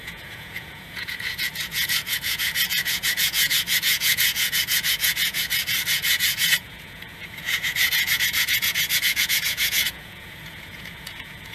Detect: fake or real fake